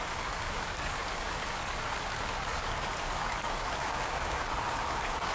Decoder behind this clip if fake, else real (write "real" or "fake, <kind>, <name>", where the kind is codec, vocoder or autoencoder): fake, codec, DAC